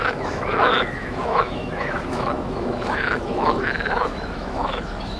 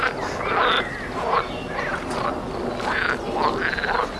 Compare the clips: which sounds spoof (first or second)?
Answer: first